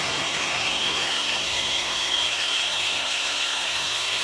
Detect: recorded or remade remade